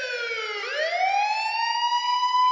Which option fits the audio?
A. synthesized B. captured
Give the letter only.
B